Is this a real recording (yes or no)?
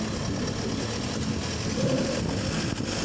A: yes